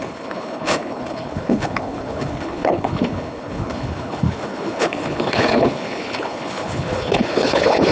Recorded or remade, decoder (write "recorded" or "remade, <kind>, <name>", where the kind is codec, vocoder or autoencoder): remade, codec, HILCodec